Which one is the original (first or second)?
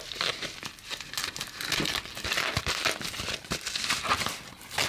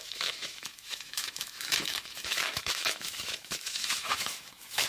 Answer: first